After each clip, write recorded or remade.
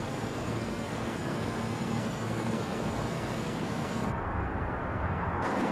remade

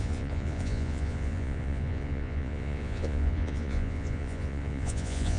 remade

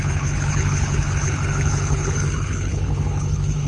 remade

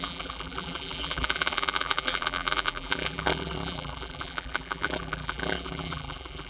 remade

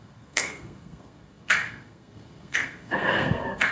remade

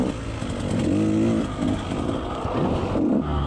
recorded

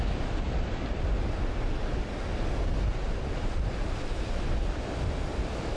recorded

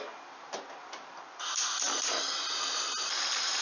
recorded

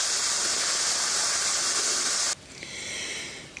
recorded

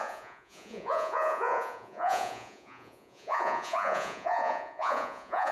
remade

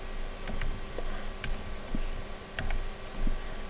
recorded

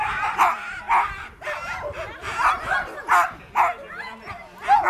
recorded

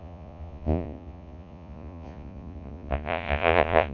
remade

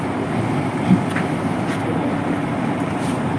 remade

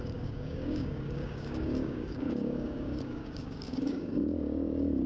remade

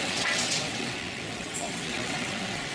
remade